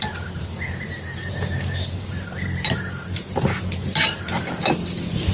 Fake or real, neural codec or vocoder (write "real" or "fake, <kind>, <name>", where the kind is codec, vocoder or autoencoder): fake, vocoder, BigVGAN v2